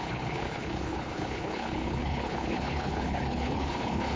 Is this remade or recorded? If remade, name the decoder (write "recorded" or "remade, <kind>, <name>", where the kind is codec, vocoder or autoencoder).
remade, codec, HILCodec